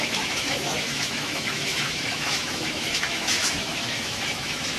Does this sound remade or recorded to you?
remade